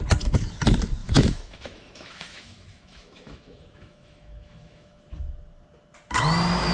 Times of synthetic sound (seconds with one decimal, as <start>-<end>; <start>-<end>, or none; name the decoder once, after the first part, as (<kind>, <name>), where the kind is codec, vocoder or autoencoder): 1.0-5.0 (autoencoder, DAC-VAE)